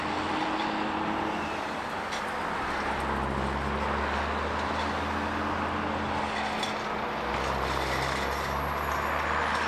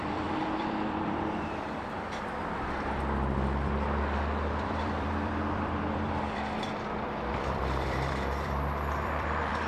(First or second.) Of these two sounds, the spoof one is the second